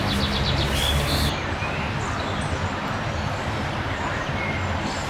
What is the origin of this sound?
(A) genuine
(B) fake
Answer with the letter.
A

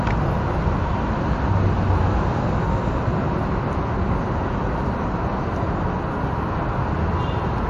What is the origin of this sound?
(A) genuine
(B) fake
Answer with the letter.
A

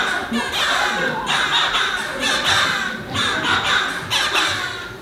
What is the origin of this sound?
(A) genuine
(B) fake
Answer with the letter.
A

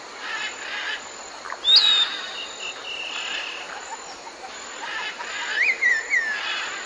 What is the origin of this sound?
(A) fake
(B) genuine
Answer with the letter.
B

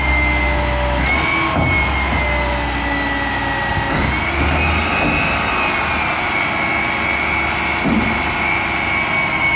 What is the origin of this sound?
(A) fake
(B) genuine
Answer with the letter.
B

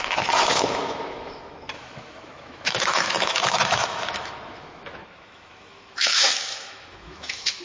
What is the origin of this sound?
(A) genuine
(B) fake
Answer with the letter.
B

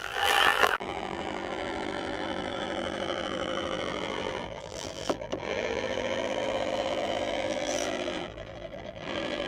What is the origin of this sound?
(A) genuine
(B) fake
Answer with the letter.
B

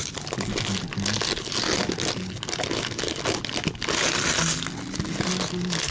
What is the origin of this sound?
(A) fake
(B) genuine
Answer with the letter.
B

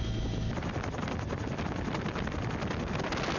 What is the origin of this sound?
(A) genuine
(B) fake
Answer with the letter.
A